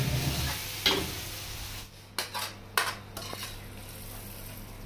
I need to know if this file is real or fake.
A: real